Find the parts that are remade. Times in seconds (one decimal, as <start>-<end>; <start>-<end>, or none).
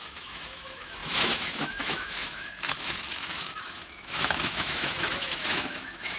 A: 0.0-6.2